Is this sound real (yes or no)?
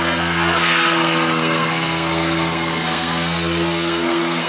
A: no